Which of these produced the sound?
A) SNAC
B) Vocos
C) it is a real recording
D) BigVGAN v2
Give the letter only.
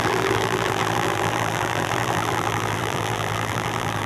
D